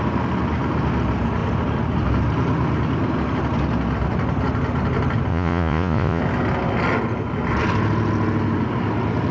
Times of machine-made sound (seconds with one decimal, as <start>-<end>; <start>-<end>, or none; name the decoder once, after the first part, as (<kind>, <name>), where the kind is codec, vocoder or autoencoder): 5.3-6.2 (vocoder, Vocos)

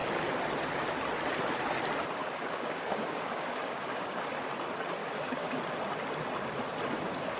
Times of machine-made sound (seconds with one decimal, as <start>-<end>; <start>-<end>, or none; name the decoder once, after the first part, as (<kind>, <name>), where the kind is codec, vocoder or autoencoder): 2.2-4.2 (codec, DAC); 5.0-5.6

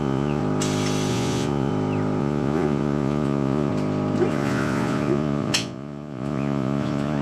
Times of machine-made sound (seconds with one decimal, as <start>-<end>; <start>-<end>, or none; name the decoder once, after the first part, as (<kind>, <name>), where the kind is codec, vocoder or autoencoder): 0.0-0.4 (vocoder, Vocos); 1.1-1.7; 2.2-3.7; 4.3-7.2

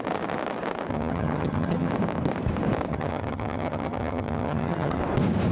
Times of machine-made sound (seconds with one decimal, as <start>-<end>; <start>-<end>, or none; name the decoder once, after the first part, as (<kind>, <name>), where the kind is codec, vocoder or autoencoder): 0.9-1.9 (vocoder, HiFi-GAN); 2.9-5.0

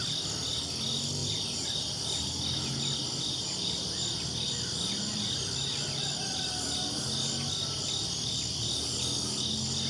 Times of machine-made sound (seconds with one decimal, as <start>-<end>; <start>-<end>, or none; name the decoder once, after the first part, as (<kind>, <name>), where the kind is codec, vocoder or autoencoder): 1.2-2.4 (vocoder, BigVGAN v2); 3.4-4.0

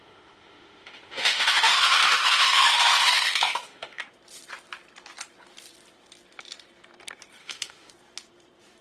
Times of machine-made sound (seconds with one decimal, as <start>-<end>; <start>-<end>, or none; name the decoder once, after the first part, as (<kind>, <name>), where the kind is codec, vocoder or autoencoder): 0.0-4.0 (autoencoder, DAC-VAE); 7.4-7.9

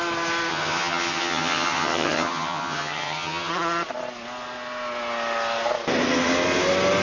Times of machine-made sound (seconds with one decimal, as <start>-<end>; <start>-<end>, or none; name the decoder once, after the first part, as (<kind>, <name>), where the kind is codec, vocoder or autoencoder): 0.5-3.5 (vocoder, HiFi-GAN)